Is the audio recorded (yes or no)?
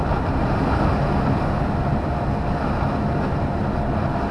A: yes